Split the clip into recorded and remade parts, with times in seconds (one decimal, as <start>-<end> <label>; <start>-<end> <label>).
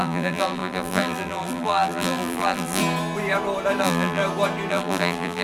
0.0-2.8 remade; 2.8-3.8 recorded; 3.8-4.2 remade; 4.2-4.7 recorded; 4.7-5.4 remade